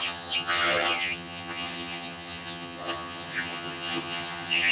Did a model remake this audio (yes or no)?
yes